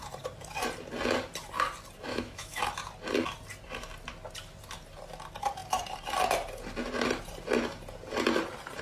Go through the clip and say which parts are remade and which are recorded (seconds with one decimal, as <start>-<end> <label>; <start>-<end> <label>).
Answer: 0.0-2.1 recorded; 2.1-2.6 remade; 2.6-8.8 recorded

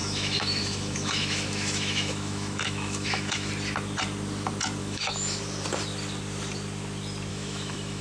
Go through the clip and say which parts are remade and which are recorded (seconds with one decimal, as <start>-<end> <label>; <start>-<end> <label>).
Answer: 0.0-3.5 remade; 3.5-4.8 recorded; 4.8-5.4 remade; 5.4-7.3 recorded; 7.3-8.0 remade

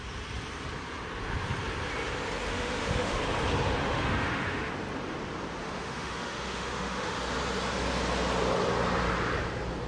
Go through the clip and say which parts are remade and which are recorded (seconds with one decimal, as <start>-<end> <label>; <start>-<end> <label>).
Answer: 0.0-2.5 recorded; 2.5-3.2 remade; 3.2-3.8 recorded; 3.8-4.7 remade; 4.7-5.6 recorded; 5.6-7.2 remade; 7.2-9.9 recorded

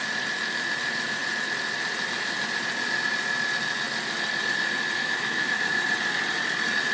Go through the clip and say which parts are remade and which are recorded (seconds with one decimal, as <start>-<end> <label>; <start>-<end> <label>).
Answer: 0.0-5.0 recorded; 5.0-5.6 remade; 5.6-6.9 recorded

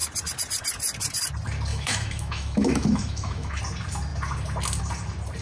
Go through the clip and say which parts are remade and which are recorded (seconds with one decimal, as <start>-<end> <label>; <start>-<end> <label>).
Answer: 0.0-1.7 recorded; 1.7-3.6 remade; 3.6-5.4 recorded

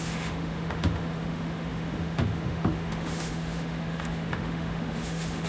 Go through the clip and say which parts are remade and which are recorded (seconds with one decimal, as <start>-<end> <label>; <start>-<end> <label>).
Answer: 0.0-5.5 remade